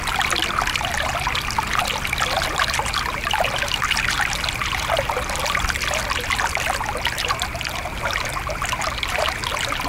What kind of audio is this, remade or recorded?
recorded